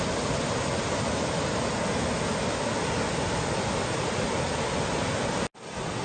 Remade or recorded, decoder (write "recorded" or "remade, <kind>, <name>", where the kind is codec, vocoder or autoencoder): recorded